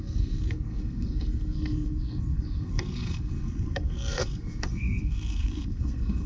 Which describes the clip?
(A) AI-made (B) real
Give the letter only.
A